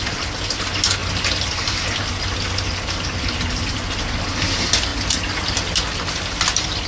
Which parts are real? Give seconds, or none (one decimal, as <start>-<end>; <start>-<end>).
0.0-4.9; 5.7-6.9